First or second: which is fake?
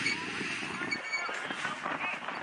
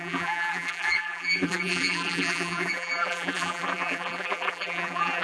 second